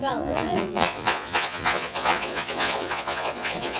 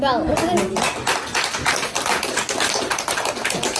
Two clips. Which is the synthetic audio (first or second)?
first